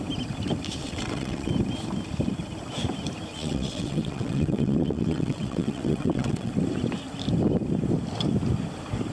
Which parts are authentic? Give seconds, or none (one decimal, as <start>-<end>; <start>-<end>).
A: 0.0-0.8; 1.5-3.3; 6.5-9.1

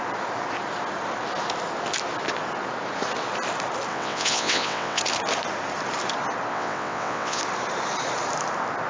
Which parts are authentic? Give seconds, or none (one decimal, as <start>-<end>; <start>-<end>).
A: 0.0-3.9; 5.0-6.5; 7.4-8.9

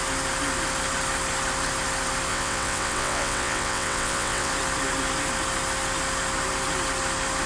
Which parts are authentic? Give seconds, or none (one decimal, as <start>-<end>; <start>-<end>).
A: 0.0-2.3; 4.5-7.5

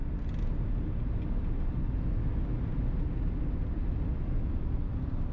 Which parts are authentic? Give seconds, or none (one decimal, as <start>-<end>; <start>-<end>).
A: 0.0-5.3

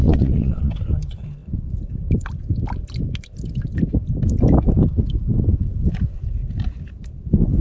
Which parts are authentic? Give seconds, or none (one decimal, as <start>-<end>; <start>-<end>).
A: 0.7-7.6

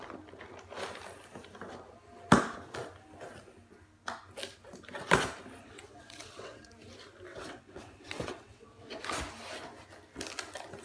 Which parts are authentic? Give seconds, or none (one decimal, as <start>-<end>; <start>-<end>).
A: 0.0-5.6; 6.7-7.3; 9.0-10.8

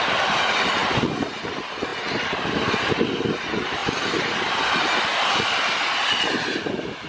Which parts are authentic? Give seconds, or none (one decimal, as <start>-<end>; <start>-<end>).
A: 0.0-7.1

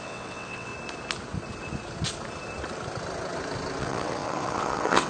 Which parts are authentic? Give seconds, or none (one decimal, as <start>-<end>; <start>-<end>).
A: 0.7-3.8